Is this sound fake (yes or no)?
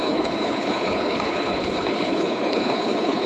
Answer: yes